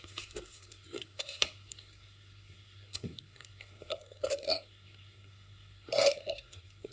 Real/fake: fake